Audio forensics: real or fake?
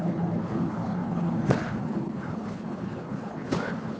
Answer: fake